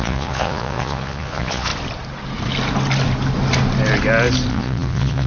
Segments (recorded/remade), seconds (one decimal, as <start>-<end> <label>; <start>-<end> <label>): 0.0-1.7 remade; 1.7-4.5 recorded; 4.5-5.3 remade